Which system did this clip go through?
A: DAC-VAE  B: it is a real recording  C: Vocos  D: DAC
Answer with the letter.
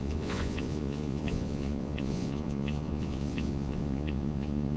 C